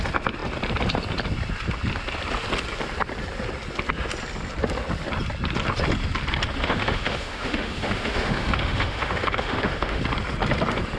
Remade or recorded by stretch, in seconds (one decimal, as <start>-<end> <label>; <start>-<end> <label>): 0.0-6.6 recorded; 6.6-10.0 remade; 10.0-11.0 recorded